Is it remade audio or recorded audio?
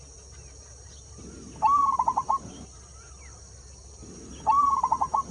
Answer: remade